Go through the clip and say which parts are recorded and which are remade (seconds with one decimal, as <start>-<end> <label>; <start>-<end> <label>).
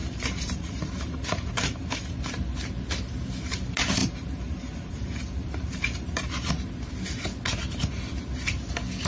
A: 0.0-2.3 remade; 2.3-4.0 recorded; 4.0-6.5 remade; 6.5-9.1 recorded